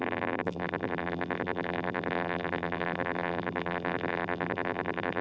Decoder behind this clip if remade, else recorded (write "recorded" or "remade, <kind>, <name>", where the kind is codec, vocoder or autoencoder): remade, vocoder, BigVGAN v2